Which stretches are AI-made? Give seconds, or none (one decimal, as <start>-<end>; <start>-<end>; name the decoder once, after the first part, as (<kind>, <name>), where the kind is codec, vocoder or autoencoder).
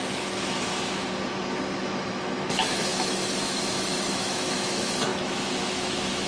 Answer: 0.0-1.0 (autoencoder, DAC-VAE); 1.8-6.3